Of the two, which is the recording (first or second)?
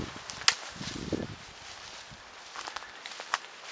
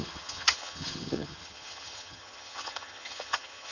first